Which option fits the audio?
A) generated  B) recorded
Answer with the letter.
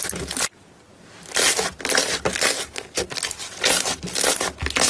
B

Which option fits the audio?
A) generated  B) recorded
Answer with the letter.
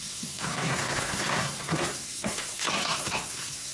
A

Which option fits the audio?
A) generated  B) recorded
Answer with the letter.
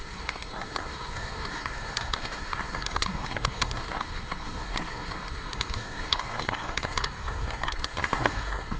A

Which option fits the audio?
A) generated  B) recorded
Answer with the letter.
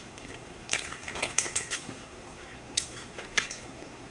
A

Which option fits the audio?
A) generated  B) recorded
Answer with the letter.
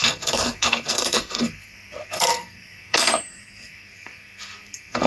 A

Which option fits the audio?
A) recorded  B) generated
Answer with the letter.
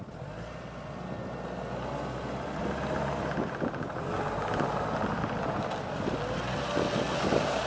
A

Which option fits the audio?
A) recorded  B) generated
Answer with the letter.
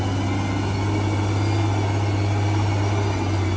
A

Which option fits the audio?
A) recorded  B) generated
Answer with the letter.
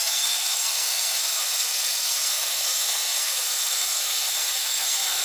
B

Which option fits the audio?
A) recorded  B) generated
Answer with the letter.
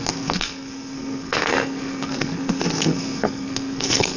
B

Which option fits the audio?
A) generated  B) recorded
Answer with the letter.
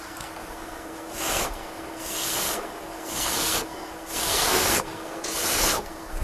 A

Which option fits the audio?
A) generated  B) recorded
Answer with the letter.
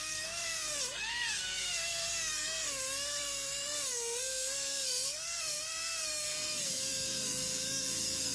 A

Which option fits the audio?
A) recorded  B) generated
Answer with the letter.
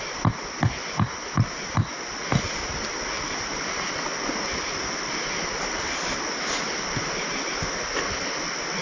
A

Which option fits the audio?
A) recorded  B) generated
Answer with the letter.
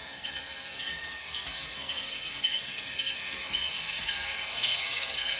B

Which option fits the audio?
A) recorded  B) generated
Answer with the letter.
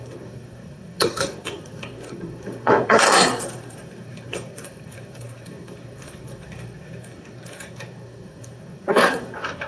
B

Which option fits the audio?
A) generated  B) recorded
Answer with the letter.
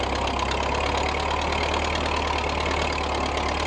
B